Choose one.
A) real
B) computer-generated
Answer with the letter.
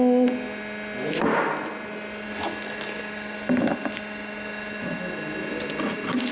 A